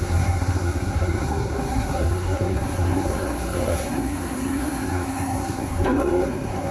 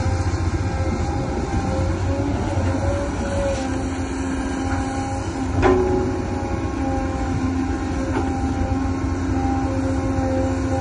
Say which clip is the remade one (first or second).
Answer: first